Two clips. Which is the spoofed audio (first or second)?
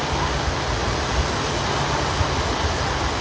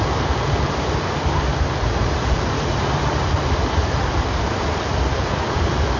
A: second